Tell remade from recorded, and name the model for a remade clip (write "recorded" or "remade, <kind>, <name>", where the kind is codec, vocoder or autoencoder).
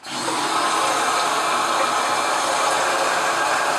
recorded